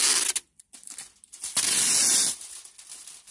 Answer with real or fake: real